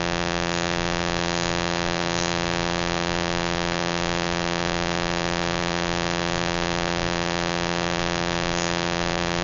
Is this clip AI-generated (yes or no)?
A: yes